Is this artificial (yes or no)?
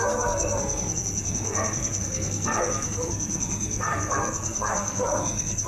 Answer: yes